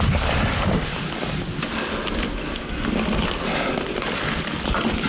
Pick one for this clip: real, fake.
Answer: real